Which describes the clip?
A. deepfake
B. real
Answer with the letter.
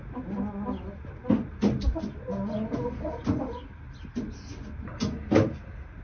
B